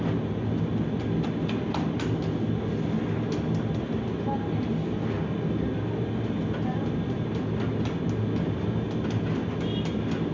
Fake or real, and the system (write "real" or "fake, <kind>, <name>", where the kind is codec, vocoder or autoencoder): real